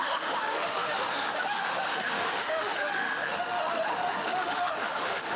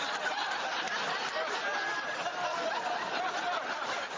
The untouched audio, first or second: second